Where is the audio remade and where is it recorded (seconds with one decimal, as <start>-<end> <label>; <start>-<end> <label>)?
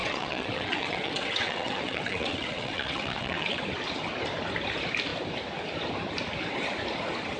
0.0-3.6 remade; 3.6-7.4 recorded